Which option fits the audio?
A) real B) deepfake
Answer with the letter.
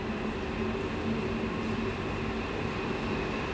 A